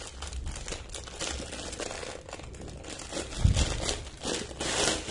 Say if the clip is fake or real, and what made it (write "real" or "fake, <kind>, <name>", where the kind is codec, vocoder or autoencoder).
real